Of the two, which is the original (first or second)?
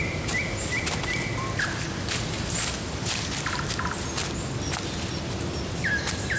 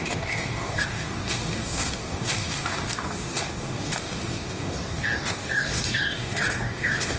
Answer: first